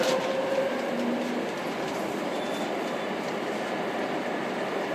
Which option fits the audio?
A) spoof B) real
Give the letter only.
A